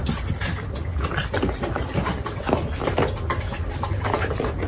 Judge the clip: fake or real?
real